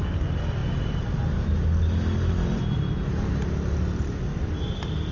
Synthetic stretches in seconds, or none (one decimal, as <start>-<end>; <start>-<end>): none